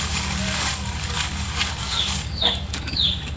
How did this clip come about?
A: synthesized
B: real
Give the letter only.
A